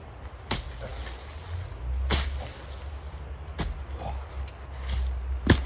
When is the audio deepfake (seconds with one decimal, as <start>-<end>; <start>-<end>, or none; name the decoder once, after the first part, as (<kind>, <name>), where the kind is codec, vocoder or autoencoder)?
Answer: none